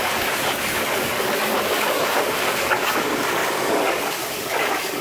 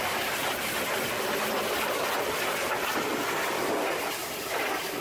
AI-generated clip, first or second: first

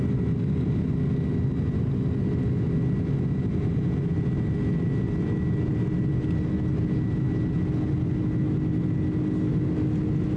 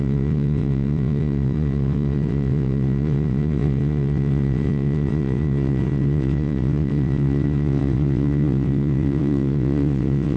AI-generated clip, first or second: second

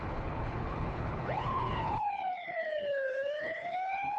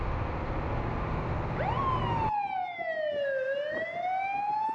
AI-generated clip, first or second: first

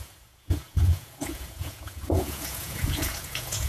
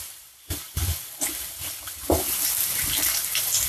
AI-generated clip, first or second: first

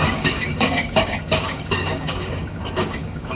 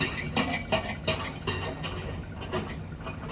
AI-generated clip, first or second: first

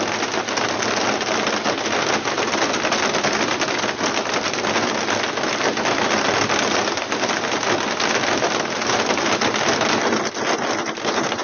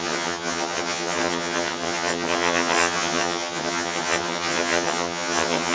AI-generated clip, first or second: second